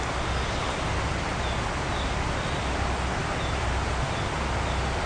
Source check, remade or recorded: recorded